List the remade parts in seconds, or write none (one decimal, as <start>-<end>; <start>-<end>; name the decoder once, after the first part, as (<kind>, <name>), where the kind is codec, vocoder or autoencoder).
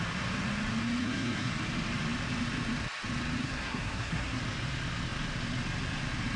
1.0-1.5 (codec, SNAC); 3.4-4.4